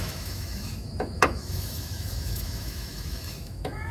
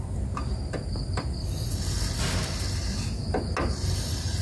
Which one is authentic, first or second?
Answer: second